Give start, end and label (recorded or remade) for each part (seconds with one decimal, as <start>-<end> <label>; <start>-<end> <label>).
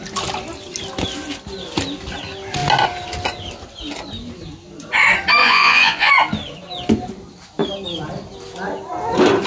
0.0-5.4 recorded; 5.4-6.1 remade; 6.1-9.5 recorded